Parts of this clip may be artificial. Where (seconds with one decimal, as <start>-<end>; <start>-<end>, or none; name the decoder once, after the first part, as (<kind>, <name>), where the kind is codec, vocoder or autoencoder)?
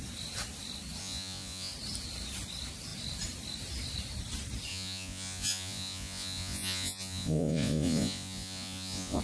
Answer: 1.0-1.7 (vocoder, Vocos); 4.7-9.2